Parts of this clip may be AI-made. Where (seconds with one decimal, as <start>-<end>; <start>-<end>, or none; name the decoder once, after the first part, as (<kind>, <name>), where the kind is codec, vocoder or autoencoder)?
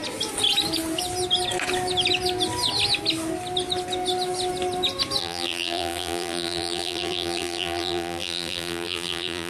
5.2-9.5 (vocoder, BigVGAN v2)